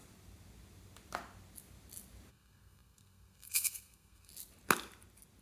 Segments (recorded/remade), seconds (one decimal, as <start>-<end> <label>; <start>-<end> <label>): 0.0-2.3 recorded; 2.3-4.3 remade; 4.3-5.4 recorded